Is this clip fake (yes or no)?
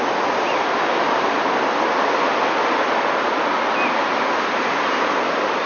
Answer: no